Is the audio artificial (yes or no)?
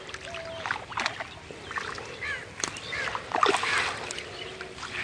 no